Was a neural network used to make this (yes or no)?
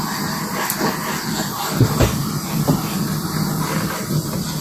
no